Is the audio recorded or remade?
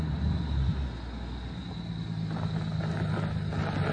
recorded